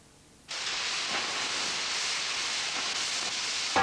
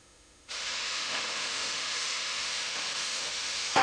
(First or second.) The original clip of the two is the first